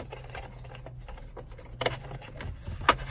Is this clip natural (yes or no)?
yes